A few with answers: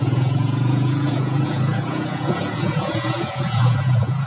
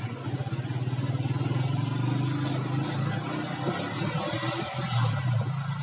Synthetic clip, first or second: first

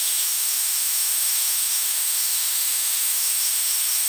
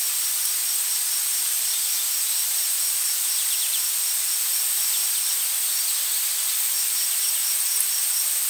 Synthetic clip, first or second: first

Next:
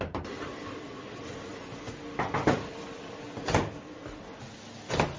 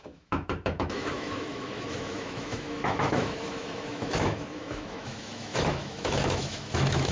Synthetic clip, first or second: second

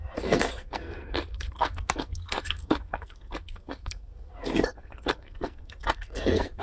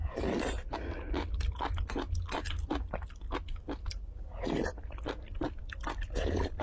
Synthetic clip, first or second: first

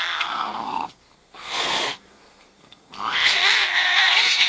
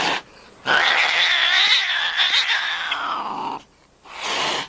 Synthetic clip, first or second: first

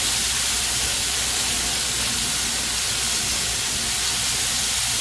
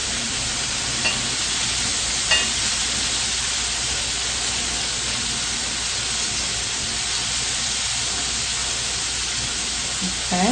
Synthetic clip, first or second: first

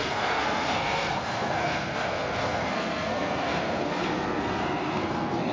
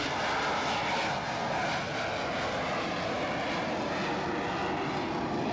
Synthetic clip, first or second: first